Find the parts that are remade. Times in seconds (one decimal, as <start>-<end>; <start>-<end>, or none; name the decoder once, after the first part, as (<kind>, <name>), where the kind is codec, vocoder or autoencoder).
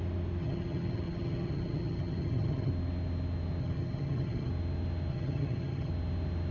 0.4-2.7 (vocoder, HiFi-GAN); 3.6-4.5; 5.1-5.9